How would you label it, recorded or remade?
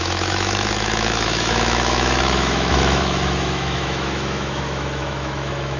remade